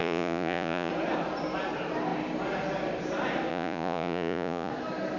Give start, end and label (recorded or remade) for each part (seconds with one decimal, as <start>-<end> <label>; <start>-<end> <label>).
0.0-0.9 remade; 0.9-3.5 recorded; 3.5-4.7 remade; 4.7-5.2 recorded